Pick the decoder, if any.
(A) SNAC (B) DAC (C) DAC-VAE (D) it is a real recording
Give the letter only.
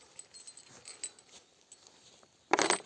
D